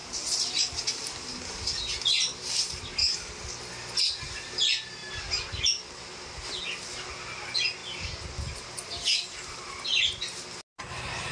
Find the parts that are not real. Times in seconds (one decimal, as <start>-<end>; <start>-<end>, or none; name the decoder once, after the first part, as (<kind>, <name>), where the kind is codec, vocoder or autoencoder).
none